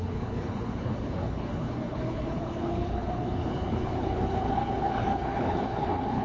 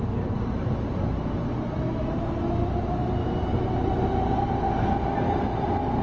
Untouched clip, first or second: second